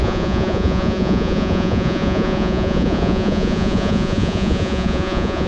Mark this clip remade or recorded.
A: remade